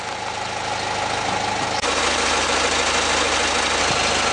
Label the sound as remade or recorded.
recorded